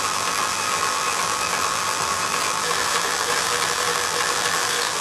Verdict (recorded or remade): remade